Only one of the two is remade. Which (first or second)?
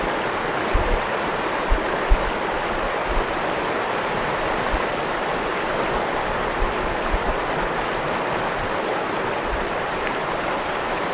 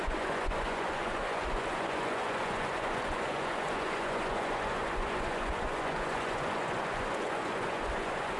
second